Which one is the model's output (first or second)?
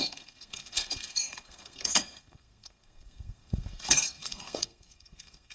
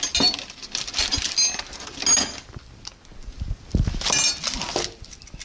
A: first